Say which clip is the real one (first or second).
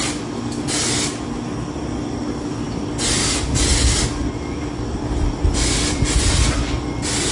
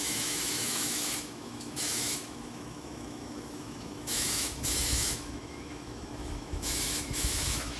first